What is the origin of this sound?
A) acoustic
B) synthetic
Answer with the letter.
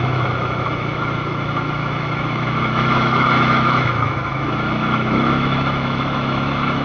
B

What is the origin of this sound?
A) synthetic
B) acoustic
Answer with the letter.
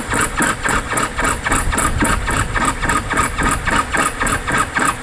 B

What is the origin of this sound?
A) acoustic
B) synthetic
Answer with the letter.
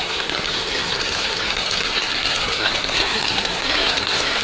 B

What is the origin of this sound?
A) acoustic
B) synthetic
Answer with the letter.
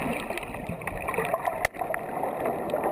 A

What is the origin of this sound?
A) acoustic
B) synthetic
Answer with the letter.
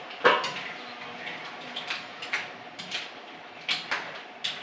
A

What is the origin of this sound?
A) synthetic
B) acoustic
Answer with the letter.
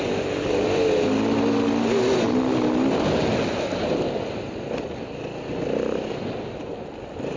B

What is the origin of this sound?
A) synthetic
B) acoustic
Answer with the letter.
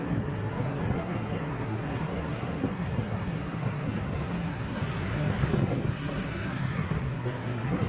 A